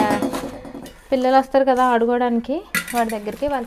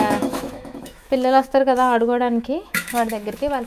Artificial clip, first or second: second